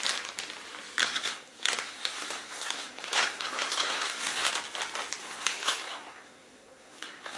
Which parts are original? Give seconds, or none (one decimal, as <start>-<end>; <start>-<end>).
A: 0.0-1.0; 4.5-5.2